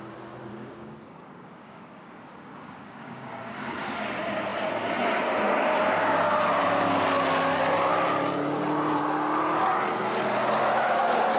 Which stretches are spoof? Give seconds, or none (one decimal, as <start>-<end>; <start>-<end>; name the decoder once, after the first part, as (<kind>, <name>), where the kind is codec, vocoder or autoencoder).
0.5-3.3 (codec, DAC)